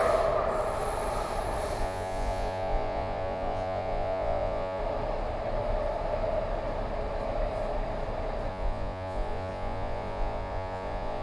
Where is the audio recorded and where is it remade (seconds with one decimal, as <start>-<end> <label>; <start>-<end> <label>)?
0.0-1.8 recorded; 1.8-4.8 remade; 4.8-8.5 recorded; 8.5-11.2 remade